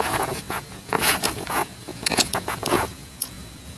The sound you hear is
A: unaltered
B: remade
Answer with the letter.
B